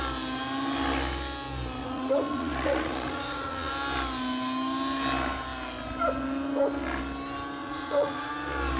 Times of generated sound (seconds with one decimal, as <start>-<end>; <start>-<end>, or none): 1.8-3.7; 7.6-8.3